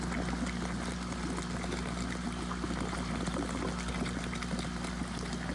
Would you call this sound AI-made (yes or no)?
no